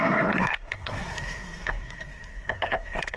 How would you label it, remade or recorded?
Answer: remade